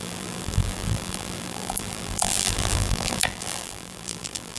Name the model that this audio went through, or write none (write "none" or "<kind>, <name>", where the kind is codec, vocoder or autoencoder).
vocoder, BigVGAN v2